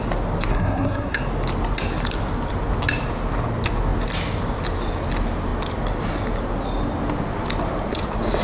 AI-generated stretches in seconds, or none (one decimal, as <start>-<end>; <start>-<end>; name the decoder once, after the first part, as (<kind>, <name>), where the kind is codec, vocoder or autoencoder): 0.5-1.2 (codec, SNAC)